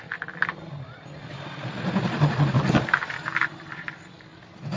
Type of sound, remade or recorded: recorded